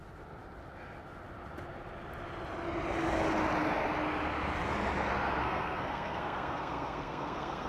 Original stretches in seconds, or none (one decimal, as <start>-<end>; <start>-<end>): 0.0-5.4